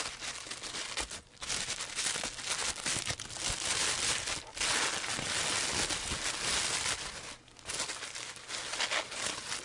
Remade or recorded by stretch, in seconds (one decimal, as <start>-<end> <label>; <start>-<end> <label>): 0.0-9.6 recorded